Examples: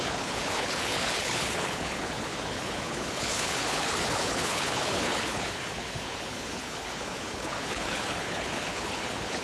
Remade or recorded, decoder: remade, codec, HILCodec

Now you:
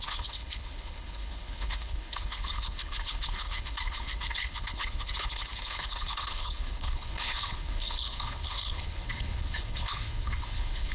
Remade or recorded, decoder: remade, codec, HILCodec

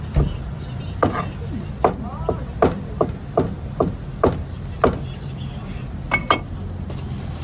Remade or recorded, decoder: recorded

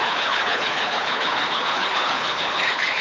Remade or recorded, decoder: remade, codec, HILCodec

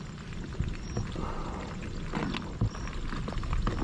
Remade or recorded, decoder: recorded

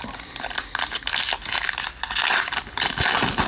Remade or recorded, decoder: recorded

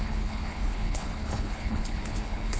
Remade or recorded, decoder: remade, codec, HILCodec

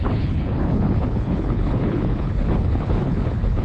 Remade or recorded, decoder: remade, codec, HILCodec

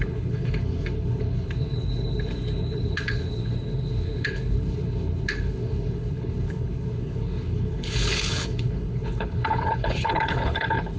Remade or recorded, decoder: remade, codec, HILCodec